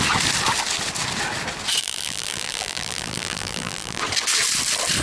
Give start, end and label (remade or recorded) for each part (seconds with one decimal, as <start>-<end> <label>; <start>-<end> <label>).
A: 0.0-1.8 recorded; 1.8-4.0 remade; 4.0-5.0 recorded